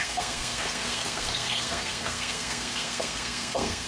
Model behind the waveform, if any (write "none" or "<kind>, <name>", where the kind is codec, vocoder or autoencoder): codec, SNAC